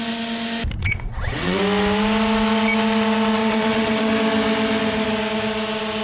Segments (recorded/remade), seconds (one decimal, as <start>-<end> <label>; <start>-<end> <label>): 0.0-0.8 recorded; 0.8-1.6 remade; 1.6-3.4 recorded; 3.4-4.1 remade; 4.1-6.0 recorded